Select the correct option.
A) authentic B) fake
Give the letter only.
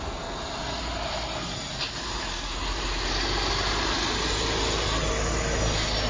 A